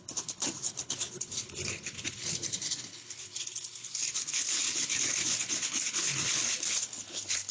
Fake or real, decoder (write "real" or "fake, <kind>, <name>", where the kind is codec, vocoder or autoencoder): fake, codec, HILCodec